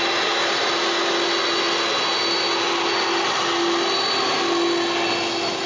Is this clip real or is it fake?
real